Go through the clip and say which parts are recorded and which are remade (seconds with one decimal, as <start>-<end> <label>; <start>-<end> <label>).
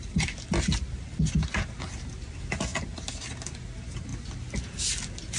0.0-5.4 recorded